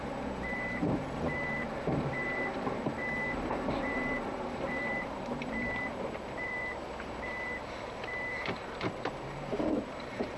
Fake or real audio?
fake